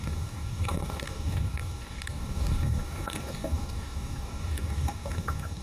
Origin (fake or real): fake